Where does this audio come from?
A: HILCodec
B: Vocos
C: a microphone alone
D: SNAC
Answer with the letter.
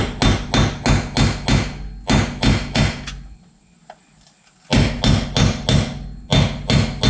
C